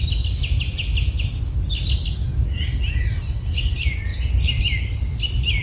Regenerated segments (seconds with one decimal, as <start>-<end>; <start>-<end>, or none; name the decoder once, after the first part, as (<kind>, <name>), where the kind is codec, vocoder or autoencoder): none

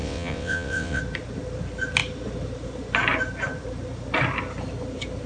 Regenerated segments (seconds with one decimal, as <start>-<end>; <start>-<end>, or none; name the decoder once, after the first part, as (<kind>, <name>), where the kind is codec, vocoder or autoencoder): 0.0-1.0 (vocoder, WaveNeXt)

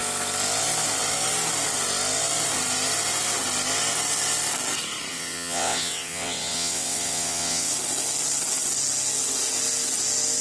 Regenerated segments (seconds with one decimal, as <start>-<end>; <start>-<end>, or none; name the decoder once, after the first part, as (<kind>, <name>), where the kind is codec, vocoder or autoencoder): 5.1-7.7 (vocoder, WaveNeXt)

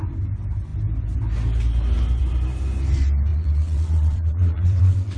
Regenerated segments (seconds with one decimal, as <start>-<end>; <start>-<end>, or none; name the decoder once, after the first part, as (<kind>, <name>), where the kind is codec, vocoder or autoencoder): 3.3-5.2 (vocoder, WaveNeXt)